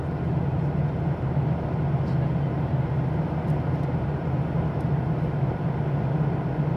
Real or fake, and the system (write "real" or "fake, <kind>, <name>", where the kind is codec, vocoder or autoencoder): real